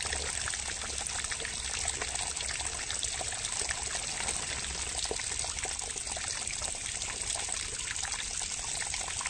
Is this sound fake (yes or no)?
no